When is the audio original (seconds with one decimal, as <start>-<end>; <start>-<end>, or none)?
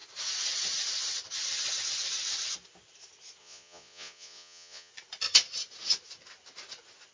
0.0-3.4; 4.9-7.1